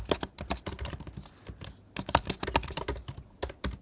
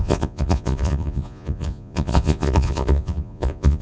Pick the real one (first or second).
first